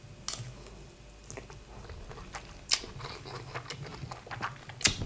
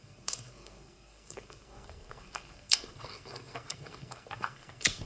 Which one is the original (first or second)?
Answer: first